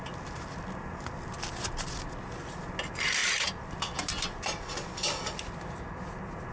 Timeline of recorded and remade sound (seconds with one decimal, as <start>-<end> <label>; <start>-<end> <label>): 0.0-6.5 recorded